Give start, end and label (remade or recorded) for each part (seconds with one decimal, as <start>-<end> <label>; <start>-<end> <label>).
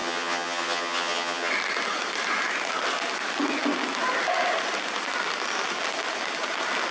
0.0-1.5 remade; 1.5-6.9 recorded